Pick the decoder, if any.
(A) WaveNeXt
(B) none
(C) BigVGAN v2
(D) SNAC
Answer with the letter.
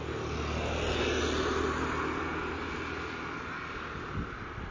B